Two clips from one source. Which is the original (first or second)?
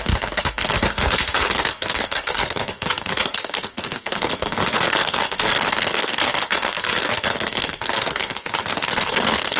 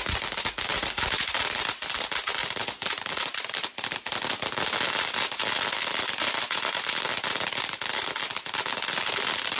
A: second